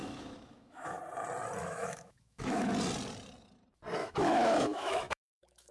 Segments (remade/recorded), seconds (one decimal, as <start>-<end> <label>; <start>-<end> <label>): 0.0-1.0 remade; 1.0-1.6 recorded; 1.6-2.7 remade; 2.7-4.0 recorded; 4.0-5.7 remade

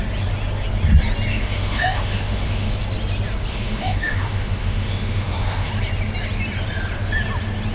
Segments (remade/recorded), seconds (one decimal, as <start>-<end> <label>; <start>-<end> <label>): 0.0-1.3 recorded; 1.3-2.7 remade; 2.7-3.5 recorded; 3.5-5.7 remade; 5.7-7.7 recorded

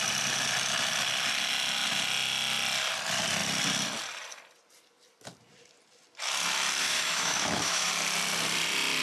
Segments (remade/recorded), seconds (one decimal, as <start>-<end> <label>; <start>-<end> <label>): 0.0-6.8 recorded; 6.8-7.9 remade; 7.9-9.0 recorded

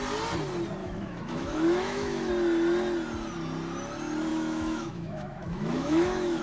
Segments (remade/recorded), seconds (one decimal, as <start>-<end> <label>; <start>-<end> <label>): 0.0-0.8 recorded; 0.8-2.3 remade; 2.3-4.3 recorded; 4.3-6.4 remade